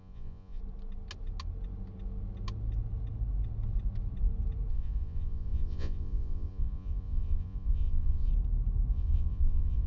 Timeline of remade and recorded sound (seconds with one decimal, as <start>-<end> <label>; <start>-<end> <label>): 0.0-0.6 remade; 0.6-4.7 recorded; 4.7-8.3 remade; 8.3-8.9 recorded; 8.9-9.9 remade